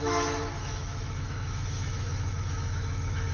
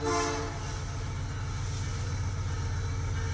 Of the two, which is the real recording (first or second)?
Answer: second